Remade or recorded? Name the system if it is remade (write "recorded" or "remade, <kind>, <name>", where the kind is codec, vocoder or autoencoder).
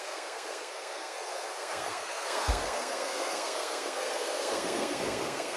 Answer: remade, codec, SNAC